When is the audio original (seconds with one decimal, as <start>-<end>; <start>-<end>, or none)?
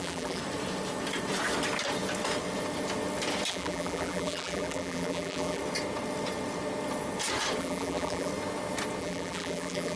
0.4-3.5; 5.6-7.6; 8.3-9.0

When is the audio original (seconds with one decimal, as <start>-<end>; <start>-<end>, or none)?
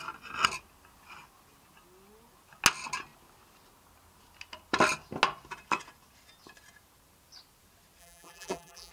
0.0-8.0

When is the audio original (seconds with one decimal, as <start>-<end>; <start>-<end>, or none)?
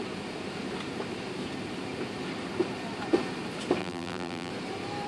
0.0-3.8; 4.5-5.1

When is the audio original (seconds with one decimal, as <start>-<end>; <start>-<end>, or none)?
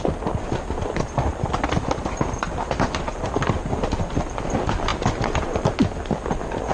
0.0-1.3; 4.0-6.7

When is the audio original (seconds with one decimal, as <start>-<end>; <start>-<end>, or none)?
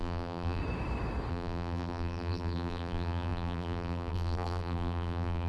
0.6-1.3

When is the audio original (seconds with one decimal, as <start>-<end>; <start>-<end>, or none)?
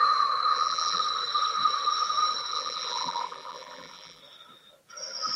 0.0-0.5; 1.0-2.5; 4.2-5.4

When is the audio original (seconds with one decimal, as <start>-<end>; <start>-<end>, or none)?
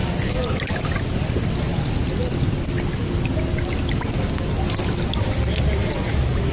0.0-6.5